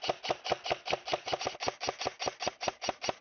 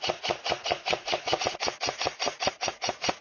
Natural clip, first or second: first